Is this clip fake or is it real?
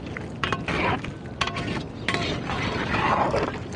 real